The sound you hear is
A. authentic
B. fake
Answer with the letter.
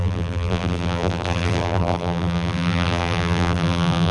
B